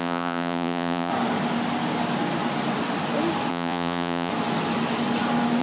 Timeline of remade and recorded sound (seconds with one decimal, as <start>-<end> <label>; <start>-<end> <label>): 0.0-1.1 remade; 1.1-3.5 recorded; 3.5-4.3 remade; 4.3-5.6 recorded